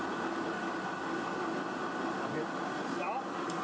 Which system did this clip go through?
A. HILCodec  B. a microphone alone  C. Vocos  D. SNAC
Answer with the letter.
B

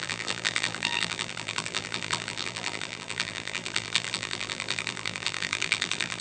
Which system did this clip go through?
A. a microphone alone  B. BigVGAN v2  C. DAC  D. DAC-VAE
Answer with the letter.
B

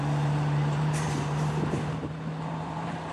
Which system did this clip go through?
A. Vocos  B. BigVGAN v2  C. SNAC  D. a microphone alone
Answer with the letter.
B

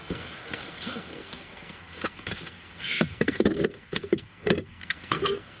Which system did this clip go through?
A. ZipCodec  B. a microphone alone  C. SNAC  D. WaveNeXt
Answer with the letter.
C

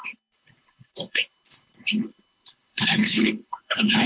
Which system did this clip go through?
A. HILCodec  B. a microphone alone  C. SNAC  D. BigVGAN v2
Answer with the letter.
A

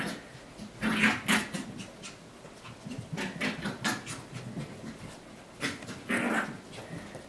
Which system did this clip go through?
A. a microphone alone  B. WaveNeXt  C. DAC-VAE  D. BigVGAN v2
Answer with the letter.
A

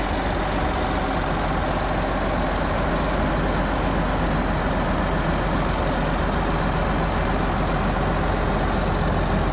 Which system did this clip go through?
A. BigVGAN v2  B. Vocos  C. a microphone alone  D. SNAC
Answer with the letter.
C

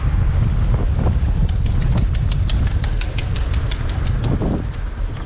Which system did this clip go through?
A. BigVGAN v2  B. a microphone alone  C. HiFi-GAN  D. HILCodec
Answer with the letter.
B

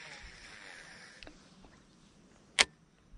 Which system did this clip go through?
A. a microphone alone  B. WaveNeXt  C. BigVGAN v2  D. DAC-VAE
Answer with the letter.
A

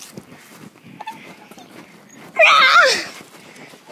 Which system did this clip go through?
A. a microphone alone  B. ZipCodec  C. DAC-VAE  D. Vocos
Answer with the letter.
A